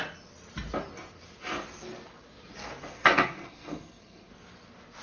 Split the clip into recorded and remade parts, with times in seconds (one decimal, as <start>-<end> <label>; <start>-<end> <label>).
0.0-2.9 recorded; 2.9-4.3 remade; 4.3-5.0 recorded